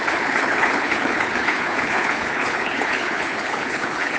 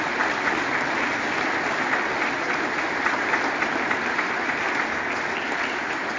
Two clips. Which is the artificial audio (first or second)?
first